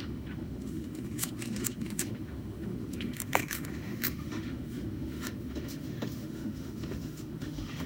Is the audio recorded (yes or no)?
no